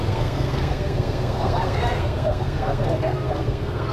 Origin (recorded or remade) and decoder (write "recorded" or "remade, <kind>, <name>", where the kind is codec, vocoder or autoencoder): remade, codec, SNAC